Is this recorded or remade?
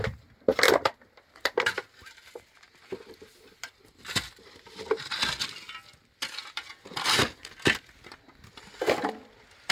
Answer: recorded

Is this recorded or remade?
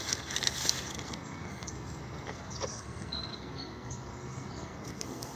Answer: remade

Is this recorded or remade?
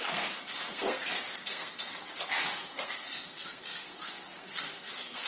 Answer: remade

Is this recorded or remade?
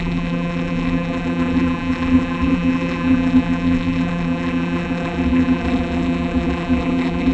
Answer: remade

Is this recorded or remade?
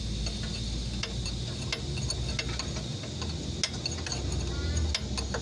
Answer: recorded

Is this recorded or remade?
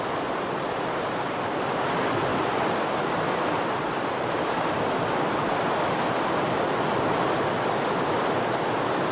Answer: recorded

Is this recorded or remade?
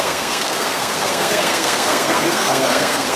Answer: remade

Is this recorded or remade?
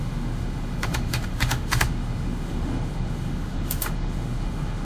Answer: remade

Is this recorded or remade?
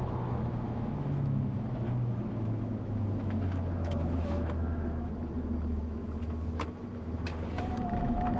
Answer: remade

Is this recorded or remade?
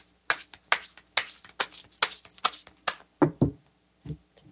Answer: recorded